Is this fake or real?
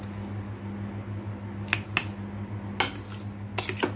real